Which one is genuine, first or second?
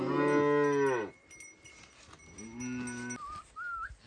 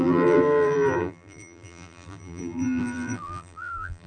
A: first